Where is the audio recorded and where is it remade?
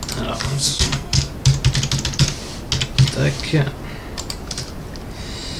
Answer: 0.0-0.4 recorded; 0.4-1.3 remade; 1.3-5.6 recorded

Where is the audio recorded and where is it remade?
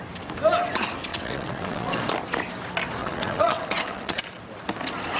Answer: 0.0-1.1 recorded; 1.1-2.0 remade; 2.0-3.0 recorded; 3.0-4.2 remade; 4.2-5.2 recorded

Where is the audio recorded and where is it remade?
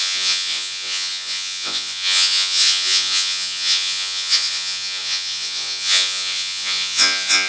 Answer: 0.0-7.5 remade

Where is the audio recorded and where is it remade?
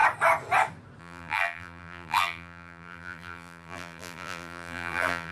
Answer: 0.0-1.0 recorded; 1.0-5.3 remade